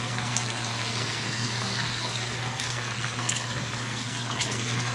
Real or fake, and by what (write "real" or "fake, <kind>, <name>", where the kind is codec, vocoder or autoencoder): fake, codec, SNAC